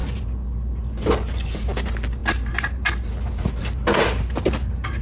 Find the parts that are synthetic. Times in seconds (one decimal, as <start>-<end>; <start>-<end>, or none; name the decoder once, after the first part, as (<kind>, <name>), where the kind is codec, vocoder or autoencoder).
none